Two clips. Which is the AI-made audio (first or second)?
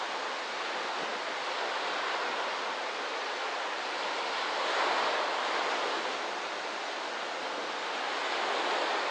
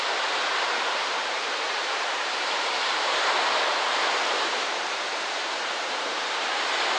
second